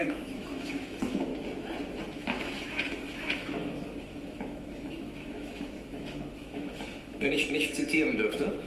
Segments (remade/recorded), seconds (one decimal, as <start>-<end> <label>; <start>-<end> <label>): 0.0-1.3 remade; 1.3-2.0 recorded; 2.0-8.7 remade